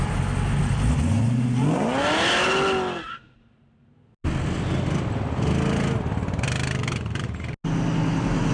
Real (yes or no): yes